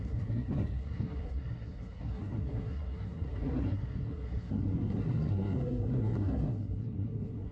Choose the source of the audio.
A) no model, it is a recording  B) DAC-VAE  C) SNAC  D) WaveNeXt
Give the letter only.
C